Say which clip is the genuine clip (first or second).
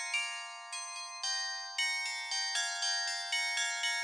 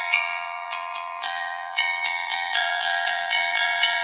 first